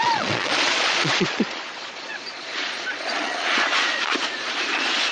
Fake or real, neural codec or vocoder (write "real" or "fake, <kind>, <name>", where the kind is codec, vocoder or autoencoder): fake, vocoder, Vocos